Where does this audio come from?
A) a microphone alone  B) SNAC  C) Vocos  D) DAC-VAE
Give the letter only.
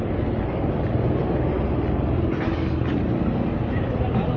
A